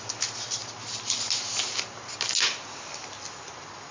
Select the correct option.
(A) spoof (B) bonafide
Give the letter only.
B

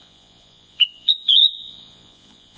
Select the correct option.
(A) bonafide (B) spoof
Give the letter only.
B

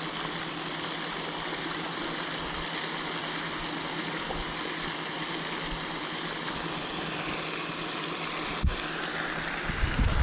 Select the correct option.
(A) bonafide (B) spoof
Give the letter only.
A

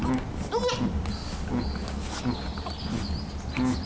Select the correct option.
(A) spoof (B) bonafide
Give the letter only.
B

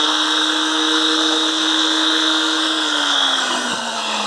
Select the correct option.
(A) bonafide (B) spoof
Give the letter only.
B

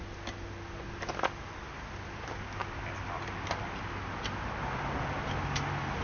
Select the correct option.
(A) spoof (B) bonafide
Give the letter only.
B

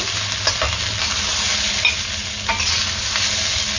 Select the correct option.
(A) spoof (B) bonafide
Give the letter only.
B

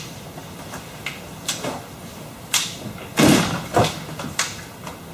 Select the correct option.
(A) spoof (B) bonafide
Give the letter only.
B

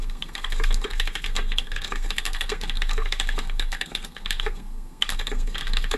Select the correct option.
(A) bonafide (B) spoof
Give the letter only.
B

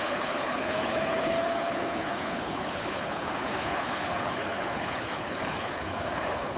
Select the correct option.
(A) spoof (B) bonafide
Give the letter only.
A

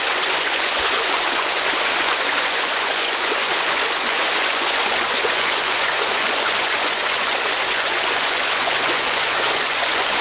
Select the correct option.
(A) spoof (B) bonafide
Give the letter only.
A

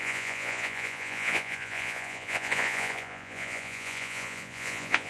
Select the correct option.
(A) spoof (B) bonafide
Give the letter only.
A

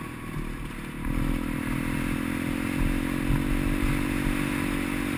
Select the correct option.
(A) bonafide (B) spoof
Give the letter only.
A